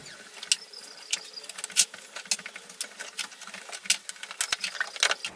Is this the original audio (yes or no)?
yes